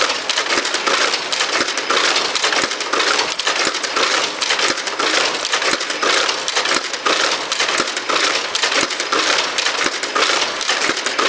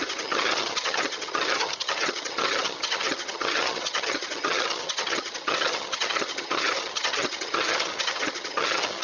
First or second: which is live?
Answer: first